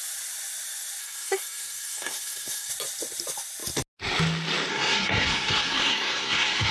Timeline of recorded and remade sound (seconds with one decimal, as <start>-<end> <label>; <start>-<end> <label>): 0.0-1.0 recorded; 1.0-2.7 remade; 2.7-4.7 recorded; 4.7-6.7 remade